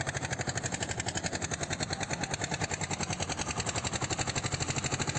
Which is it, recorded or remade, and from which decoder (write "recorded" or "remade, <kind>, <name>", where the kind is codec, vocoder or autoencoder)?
recorded